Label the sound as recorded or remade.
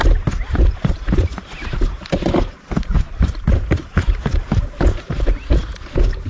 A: recorded